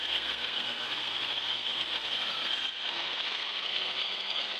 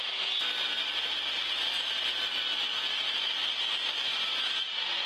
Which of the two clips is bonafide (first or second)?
second